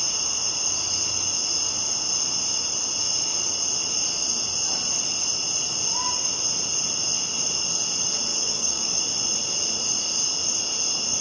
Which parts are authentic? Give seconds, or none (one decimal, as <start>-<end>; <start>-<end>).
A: 0.0-8.3; 9.0-11.2